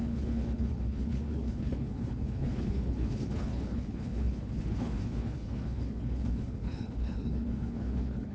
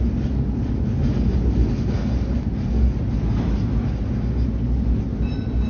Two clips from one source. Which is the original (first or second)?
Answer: second